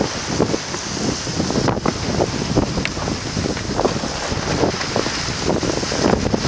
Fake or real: real